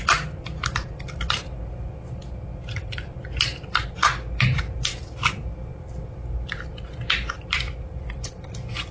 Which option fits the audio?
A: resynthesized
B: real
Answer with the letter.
A